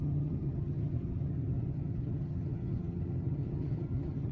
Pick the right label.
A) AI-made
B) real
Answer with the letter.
A